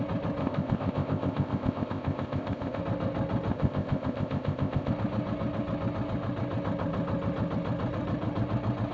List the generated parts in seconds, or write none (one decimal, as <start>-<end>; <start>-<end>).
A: 0.4-2.8; 3.5-4.9